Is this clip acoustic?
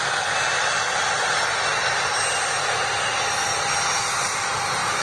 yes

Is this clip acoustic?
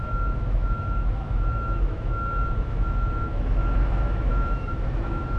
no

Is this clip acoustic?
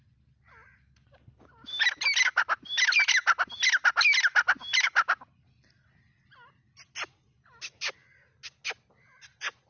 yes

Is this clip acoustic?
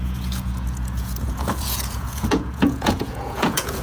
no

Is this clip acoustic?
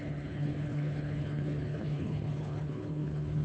no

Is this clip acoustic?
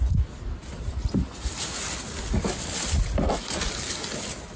yes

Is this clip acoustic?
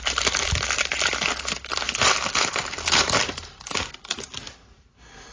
yes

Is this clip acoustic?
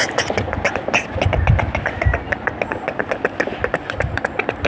yes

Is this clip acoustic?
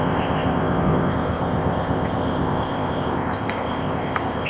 no